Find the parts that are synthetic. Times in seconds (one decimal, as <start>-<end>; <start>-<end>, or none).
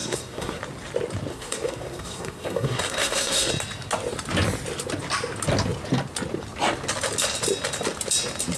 0.0-0.6; 1.3-3.5